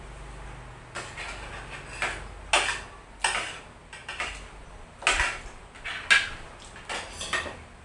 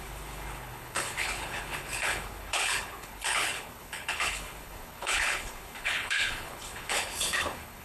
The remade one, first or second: second